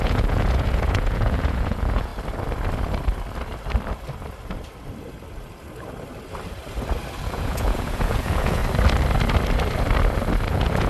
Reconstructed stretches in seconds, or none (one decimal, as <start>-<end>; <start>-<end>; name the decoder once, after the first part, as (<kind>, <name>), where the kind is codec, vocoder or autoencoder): 0.0-2.1 (vocoder, Vocos); 7.2-8.6; 10.5-10.9